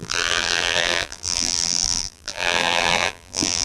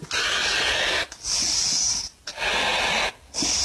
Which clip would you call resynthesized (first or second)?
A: first